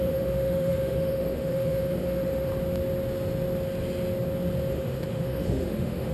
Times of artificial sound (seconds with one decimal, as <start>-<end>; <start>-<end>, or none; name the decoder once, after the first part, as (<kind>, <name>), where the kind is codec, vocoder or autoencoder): 0.0-2.5 (autoencoder, DAC-VAE); 4.7-6.1